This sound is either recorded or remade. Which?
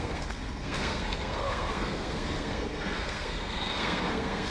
remade